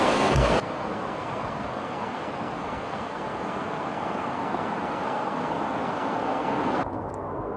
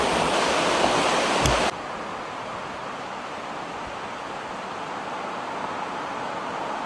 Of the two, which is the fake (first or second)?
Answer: first